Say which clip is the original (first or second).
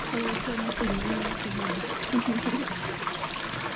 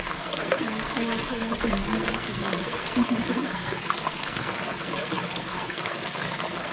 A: first